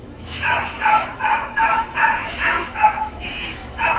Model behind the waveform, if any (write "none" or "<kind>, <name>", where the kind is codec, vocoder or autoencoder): autoencoder, DAC-VAE